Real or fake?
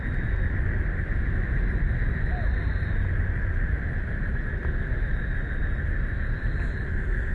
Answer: real